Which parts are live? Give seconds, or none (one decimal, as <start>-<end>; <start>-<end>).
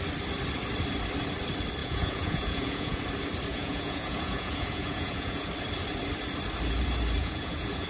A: 0.0-1.8; 3.0-3.5; 5.5-7.2